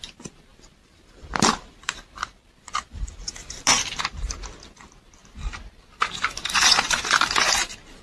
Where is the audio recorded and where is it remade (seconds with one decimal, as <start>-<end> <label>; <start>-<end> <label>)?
0.0-0.5 recorded; 0.5-3.5 remade; 3.5-8.0 recorded